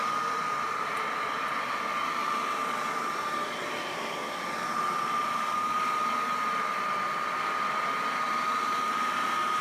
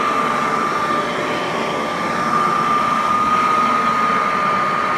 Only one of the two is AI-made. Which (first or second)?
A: first